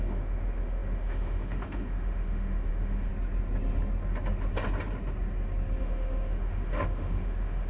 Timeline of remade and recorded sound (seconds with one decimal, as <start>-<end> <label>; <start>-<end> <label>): 0.0-3.1 remade; 3.1-5.8 recorded; 5.8-7.7 remade